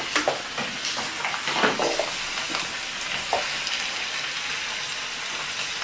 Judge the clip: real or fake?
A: real